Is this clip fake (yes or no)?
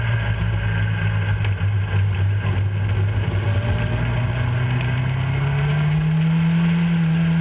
no